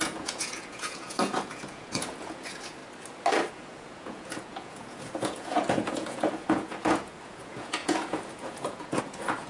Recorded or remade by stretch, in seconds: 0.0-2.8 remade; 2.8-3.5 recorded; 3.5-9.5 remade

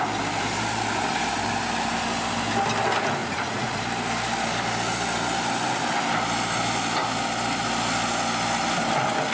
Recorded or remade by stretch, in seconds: 0.0-3.2 recorded; 3.2-3.8 remade; 3.8-9.3 recorded

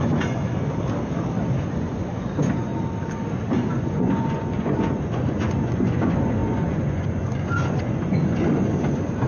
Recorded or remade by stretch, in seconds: 0.0-0.4 remade; 0.4-1.6 recorded; 1.6-2.7 remade; 2.7-3.7 recorded; 3.7-9.3 remade

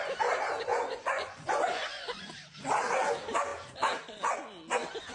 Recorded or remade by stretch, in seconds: 0.0-0.7 recorded; 0.7-2.2 remade; 2.2-5.1 recorded

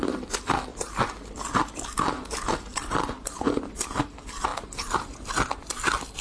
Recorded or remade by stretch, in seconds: 0.0-6.2 recorded